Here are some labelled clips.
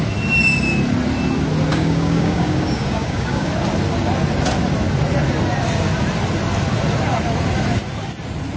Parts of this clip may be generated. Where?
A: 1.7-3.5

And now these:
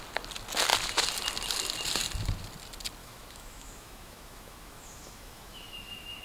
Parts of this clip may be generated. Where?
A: 3.0-6.2

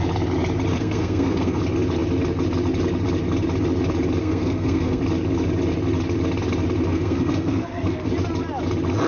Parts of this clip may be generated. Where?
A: 0.7-1.6; 4.2-5.0; 6.9-8.1

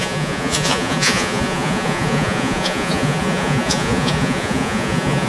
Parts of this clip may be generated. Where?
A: 0.0-5.3

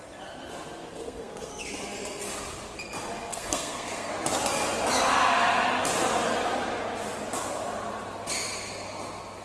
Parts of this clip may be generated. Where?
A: 0.8-1.5; 3.3-4.1